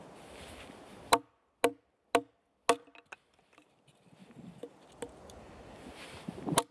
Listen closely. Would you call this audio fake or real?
real